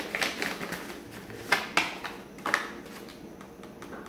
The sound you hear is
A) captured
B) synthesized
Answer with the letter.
A